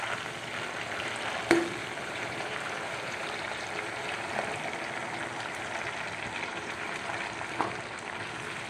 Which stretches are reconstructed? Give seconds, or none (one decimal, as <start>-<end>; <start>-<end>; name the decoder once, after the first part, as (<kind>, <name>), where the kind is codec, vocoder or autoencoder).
1.8-4.3 (vocoder, BigVGAN v2); 6.5-7.1